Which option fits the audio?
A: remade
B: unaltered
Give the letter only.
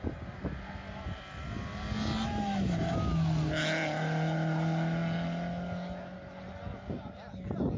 B